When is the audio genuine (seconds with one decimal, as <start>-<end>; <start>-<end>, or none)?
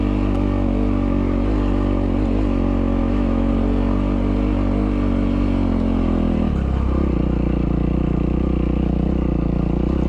0.0-3.0; 3.5-10.1